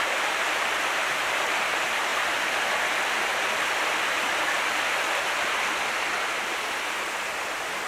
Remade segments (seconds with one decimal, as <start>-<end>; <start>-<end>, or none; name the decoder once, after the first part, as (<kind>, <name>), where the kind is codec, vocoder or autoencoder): none